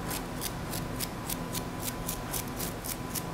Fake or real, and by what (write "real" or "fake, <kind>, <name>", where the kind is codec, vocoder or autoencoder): real